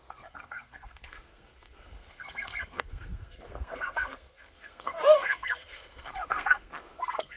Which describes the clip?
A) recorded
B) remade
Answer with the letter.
B